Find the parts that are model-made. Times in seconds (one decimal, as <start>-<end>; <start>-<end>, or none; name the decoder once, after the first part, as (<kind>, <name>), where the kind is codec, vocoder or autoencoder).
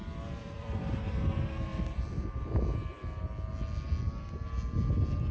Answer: 0.0-1.2 (vocoder, BigVGAN v2); 1.7-3.5